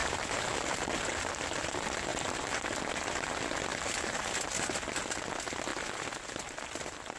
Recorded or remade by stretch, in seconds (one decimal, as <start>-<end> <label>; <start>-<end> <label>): 0.0-0.9 remade; 0.9-2.1 recorded; 2.1-2.9 remade; 2.9-3.7 recorded; 3.7-4.3 remade; 4.3-7.2 recorded